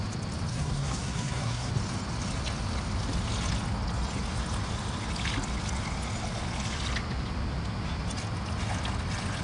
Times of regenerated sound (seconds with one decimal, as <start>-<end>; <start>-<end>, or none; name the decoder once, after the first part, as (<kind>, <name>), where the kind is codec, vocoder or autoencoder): 0.5-1.7 (codec, SNAC)